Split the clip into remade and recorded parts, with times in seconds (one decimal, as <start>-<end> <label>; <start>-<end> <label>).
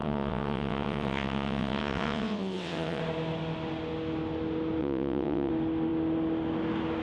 0.0-3.0 remade; 3.0-4.8 recorded; 4.8-5.5 remade; 5.5-7.0 recorded